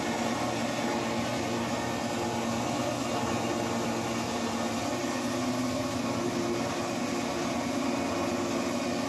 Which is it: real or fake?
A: real